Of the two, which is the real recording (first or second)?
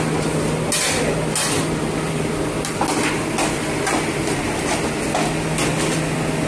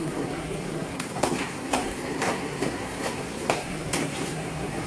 first